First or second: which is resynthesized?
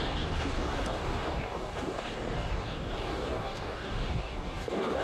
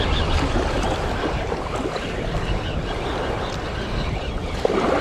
first